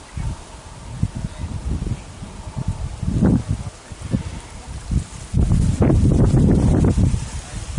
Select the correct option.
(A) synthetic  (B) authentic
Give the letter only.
B